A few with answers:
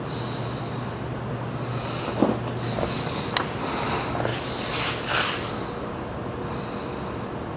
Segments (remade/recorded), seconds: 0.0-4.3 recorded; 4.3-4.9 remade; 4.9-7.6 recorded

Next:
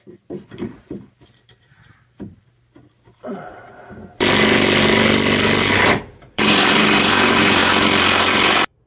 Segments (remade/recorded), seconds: 0.0-3.6 remade; 3.6-6.0 recorded; 6.0-7.6 remade; 7.6-8.3 recorded; 8.3-8.9 remade

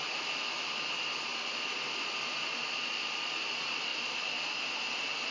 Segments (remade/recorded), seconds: 0.0-3.9 recorded; 3.9-4.4 remade; 4.4-5.3 recorded